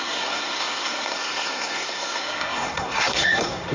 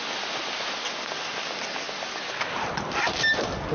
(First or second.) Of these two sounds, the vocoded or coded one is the first